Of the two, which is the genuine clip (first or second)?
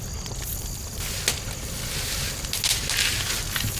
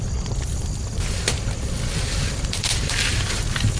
first